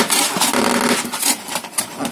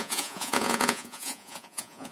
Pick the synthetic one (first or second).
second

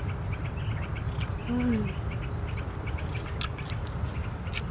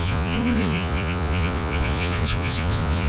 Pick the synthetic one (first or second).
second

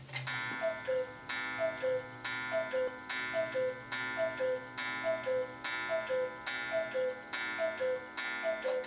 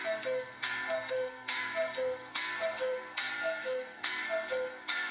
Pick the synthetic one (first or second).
second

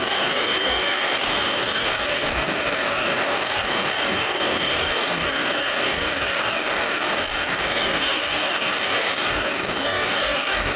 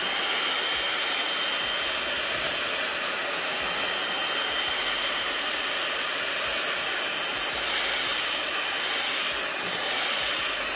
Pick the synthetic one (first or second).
first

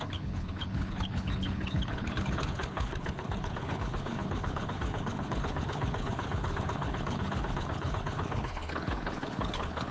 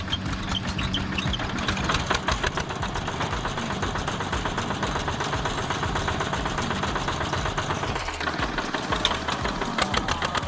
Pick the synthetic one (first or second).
first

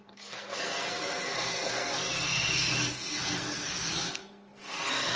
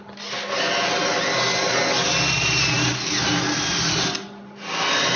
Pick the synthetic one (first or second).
first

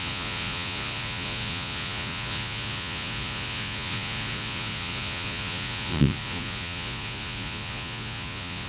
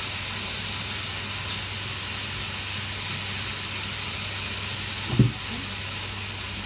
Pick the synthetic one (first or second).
first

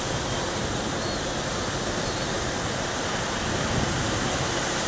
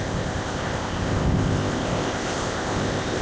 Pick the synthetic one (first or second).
second